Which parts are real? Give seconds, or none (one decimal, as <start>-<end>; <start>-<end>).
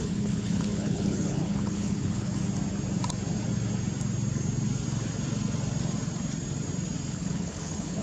2.3-7.1